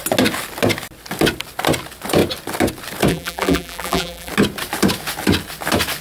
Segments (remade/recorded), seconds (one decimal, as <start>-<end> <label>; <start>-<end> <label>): 0.0-3.1 recorded; 3.1-4.3 remade; 4.3-6.0 recorded